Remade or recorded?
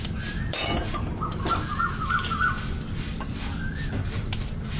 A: recorded